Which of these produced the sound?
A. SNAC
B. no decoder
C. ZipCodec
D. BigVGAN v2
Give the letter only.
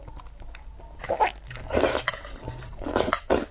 B